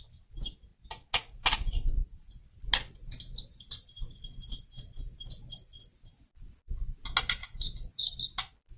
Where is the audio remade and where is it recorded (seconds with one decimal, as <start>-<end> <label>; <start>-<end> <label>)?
0.0-2.0 recorded; 2.0-2.6 remade; 2.6-7.4 recorded; 7.4-8.0 remade; 8.0-8.8 recorded